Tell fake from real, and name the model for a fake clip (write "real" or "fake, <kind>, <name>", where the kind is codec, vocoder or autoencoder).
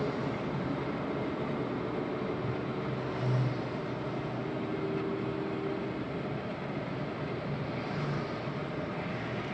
real